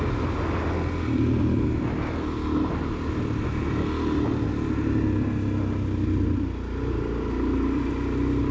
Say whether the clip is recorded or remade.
recorded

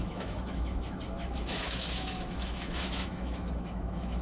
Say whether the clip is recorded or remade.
remade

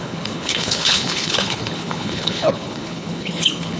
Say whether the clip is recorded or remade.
remade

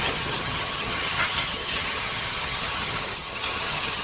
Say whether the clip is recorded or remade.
remade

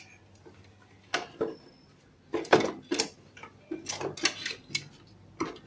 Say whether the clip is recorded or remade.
recorded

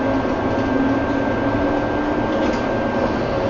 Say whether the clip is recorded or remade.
recorded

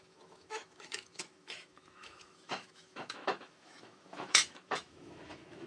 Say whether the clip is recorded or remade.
remade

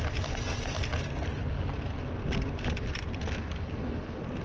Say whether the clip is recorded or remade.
recorded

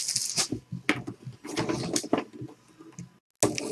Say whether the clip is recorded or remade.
recorded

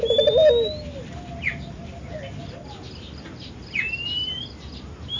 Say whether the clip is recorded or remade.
recorded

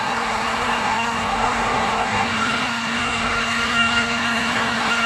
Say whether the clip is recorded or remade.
remade